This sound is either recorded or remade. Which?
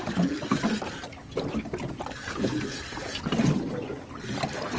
recorded